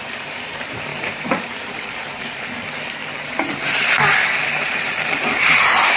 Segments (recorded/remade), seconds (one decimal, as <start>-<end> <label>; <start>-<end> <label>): 0.0-6.0 remade